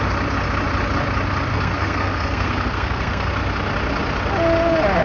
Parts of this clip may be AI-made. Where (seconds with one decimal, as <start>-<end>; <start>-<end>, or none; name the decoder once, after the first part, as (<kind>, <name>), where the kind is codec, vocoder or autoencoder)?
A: 1.5-3.3 (codec, SNAC)